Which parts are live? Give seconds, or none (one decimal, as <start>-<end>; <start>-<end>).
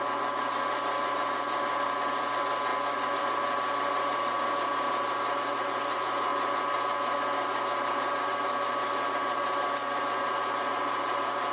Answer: 0.0-11.5